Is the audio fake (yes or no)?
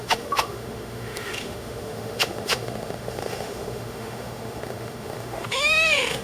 yes